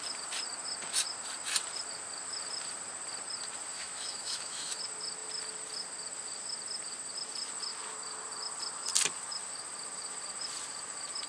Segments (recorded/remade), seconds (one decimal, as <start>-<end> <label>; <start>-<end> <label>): 0.0-3.7 recorded; 3.7-4.8 remade; 4.8-11.3 recorded